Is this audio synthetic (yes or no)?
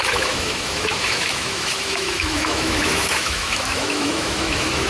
yes